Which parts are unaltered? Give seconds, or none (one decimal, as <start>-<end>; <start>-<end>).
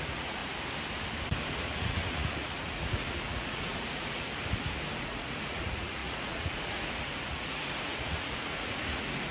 0.4-1.5; 4.3-5.0